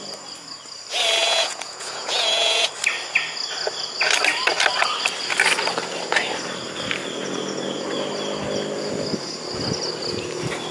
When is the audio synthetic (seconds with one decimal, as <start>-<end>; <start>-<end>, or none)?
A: 1.2-2.7